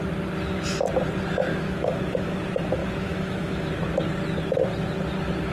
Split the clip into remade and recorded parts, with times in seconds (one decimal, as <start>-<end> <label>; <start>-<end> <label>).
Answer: 0.0-1.5 recorded; 1.5-2.4 remade; 2.4-2.8 recorded; 2.8-3.7 remade; 3.7-5.5 recorded